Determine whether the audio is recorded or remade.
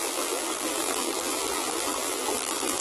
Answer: remade